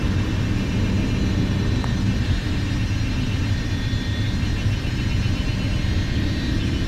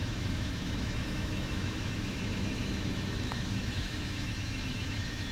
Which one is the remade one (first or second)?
second